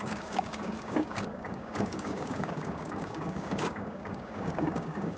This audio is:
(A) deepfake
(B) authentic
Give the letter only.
A